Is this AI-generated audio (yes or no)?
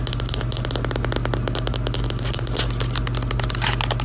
no